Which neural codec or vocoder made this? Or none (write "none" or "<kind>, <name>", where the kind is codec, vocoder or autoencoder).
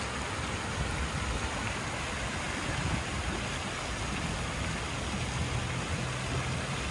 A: none